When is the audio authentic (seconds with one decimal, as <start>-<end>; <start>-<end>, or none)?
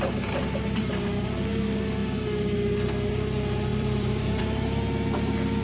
0.0-3.7; 4.4-5.6